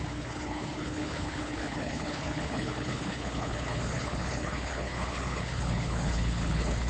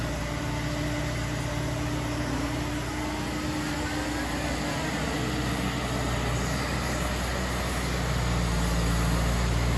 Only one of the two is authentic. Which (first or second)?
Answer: second